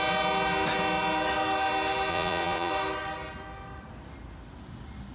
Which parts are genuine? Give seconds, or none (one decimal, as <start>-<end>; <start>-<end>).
0.0-2.1; 2.7-5.1